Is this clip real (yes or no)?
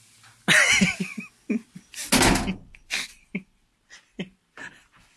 yes